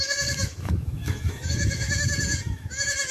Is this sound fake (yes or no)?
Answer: yes